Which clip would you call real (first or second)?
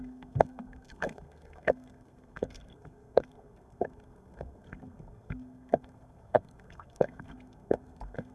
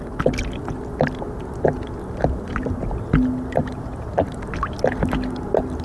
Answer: second